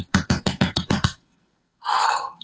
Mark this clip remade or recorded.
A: remade